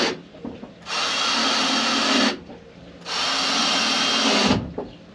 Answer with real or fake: real